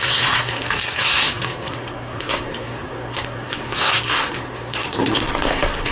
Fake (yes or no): yes